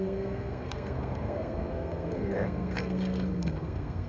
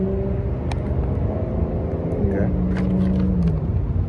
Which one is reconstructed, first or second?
first